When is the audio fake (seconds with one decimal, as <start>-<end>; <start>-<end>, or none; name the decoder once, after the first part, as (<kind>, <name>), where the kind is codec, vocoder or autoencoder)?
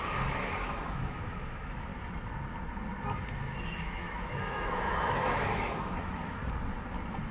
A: 0.0-1.9 (autoencoder, DAC-VAE); 3.6-6.4